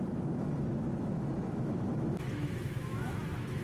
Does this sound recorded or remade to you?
remade